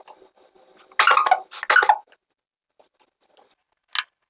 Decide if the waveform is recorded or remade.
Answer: recorded